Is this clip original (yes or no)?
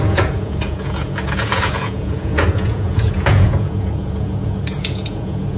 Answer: no